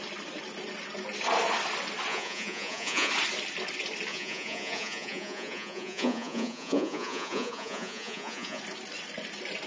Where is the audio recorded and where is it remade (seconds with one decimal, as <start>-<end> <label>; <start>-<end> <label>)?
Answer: 0.0-2.1 recorded; 2.1-3.1 remade; 3.1-4.1 recorded; 4.1-8.6 remade; 8.6-9.7 recorded